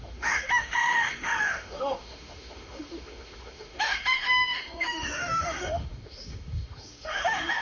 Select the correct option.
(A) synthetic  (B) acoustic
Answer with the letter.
A